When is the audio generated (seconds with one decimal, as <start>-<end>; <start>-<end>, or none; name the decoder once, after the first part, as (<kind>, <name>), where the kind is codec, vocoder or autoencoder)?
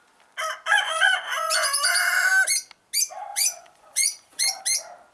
0.7-2.3 (vocoder, Vocos); 3.3-4.6